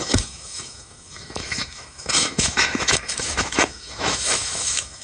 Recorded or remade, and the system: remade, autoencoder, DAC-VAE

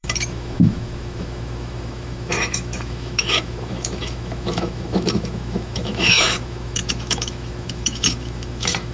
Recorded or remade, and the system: remade, autoencoder, DAC-VAE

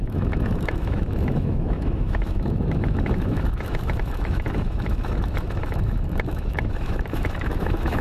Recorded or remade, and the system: remade, autoencoder, DAC-VAE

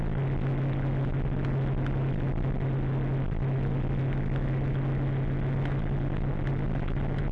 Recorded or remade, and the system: recorded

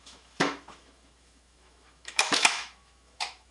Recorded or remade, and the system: remade, autoencoder, DAC-VAE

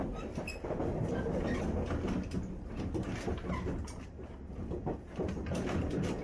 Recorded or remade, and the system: recorded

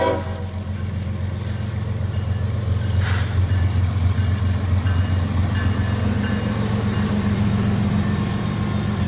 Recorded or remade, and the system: recorded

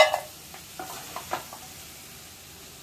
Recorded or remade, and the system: recorded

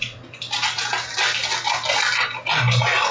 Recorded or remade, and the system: recorded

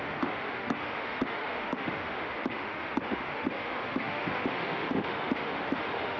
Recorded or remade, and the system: remade, autoencoder, DAC-VAE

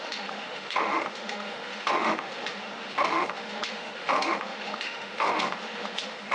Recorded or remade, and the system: remade, autoencoder, DAC-VAE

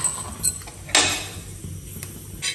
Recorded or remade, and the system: recorded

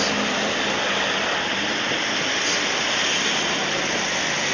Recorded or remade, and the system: recorded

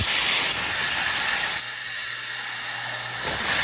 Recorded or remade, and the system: recorded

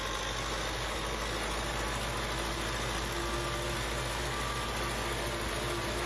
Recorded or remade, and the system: recorded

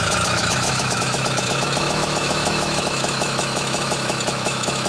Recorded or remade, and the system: remade, autoencoder, DAC-VAE